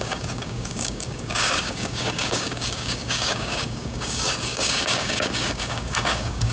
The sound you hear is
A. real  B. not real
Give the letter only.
B